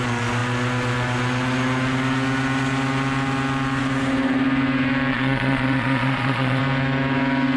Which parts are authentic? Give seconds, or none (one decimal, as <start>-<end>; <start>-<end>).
0.0-5.1; 6.6-7.6